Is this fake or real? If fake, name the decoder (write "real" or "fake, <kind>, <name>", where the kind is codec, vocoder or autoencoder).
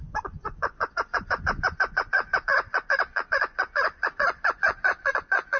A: fake, vocoder, Vocos